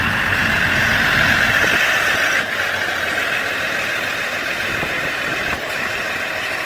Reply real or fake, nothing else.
real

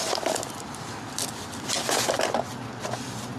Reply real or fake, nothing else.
real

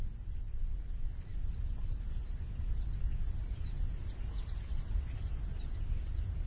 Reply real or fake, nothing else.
real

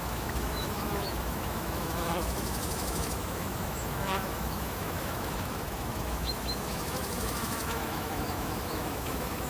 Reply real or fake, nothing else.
fake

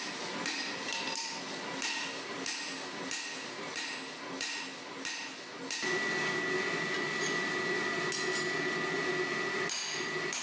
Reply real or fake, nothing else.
real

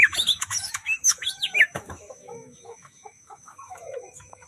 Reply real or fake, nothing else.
fake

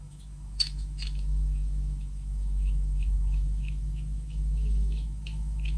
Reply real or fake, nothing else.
fake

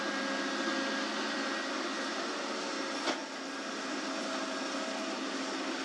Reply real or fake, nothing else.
real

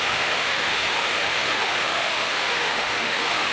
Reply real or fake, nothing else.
fake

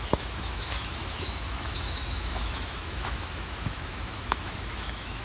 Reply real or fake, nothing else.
fake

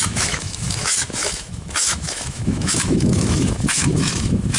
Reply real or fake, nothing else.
fake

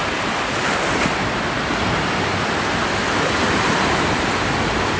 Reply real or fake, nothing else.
real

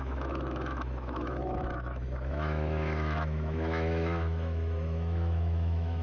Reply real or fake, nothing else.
fake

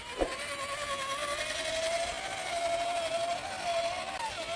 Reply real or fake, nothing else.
real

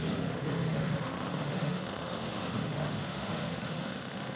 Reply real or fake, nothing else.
fake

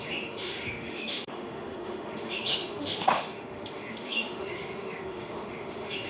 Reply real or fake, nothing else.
fake